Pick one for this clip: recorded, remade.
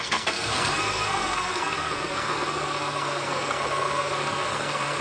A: remade